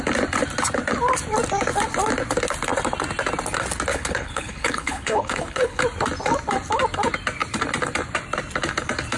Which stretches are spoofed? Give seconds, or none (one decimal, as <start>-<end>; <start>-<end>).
3.9-5.8